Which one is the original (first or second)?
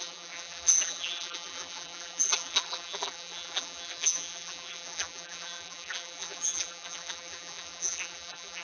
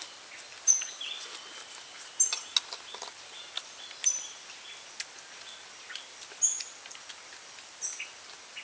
second